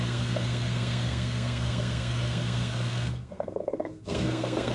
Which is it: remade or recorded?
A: remade